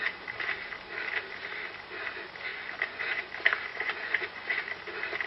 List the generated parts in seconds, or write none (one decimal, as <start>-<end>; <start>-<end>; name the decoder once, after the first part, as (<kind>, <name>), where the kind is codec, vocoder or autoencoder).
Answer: 2.5-3.3 (vocoder, Vocos); 3.7-4.6

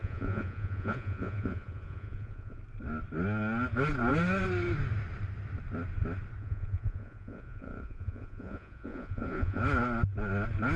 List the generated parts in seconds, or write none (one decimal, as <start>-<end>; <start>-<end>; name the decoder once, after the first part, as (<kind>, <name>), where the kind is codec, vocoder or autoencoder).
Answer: 0.0-2.6 (vocoder, Vocos); 6.4-9.6

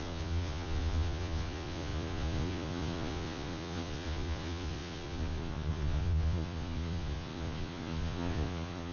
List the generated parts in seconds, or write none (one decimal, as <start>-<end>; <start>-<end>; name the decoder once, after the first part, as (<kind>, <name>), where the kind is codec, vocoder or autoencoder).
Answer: 0.0-8.9 (vocoder, Vocos)

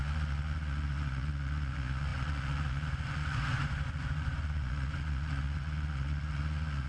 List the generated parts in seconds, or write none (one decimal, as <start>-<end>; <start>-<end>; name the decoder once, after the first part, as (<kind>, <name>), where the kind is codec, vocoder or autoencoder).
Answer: 0.0-6.9 (vocoder, Vocos)

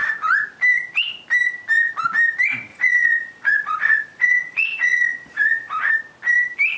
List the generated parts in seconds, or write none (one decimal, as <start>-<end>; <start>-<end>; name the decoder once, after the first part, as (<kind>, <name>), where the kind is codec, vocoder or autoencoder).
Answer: 2.7-5.9 (vocoder, Vocos)

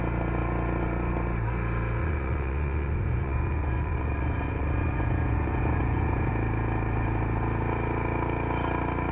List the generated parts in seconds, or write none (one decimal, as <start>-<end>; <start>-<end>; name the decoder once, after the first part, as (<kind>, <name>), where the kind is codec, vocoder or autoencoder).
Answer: 2.0-6.3 (vocoder, Vocos)

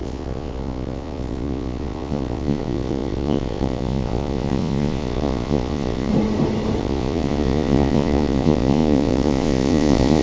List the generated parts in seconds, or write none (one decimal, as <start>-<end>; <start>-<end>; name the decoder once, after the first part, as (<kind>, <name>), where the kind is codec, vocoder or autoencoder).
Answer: 0.0-6.1 (vocoder, Vocos); 6.8-10.2